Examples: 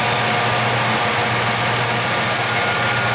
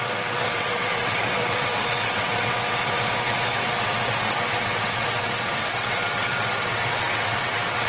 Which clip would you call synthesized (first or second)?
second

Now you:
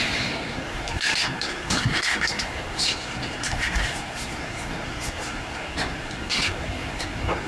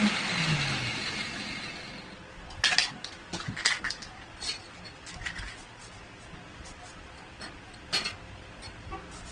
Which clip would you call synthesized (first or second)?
first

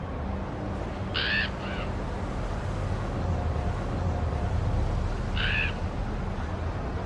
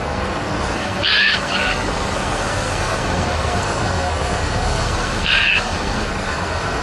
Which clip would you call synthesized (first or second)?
second